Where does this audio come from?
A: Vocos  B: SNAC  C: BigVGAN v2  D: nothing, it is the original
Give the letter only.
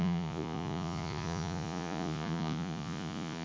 A